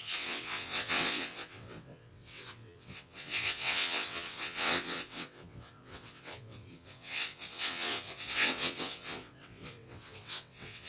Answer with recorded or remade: remade